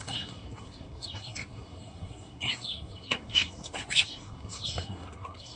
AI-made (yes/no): yes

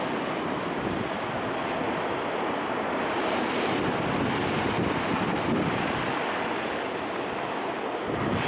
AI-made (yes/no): no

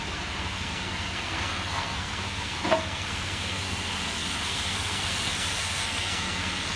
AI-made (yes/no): yes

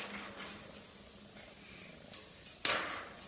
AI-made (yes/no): no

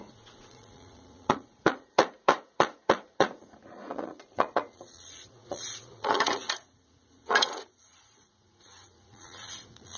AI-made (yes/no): yes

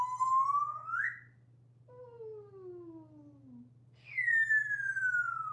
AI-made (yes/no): no